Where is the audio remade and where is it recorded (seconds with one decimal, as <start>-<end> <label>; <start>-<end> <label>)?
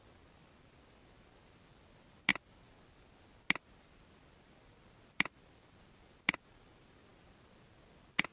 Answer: 0.0-8.3 recorded